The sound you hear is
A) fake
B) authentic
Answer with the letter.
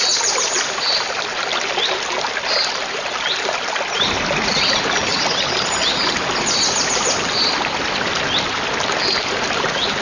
B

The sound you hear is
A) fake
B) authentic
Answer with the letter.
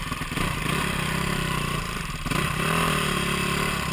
A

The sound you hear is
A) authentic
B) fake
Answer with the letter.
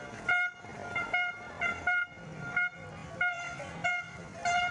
A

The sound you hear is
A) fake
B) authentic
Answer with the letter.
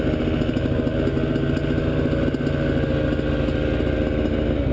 B